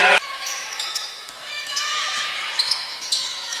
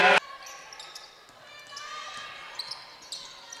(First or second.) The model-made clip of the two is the first